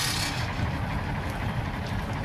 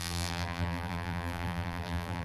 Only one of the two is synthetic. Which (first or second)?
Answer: second